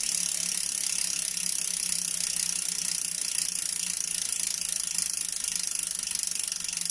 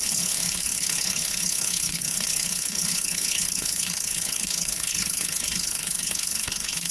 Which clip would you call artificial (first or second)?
second